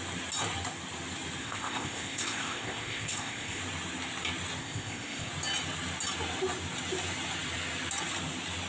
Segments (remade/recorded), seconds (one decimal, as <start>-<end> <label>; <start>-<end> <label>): 0.0-1.4 recorded; 1.4-3.6 remade; 3.6-4.6 recorded; 4.6-5.3 remade; 5.3-8.7 recorded